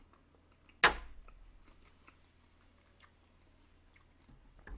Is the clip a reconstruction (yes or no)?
no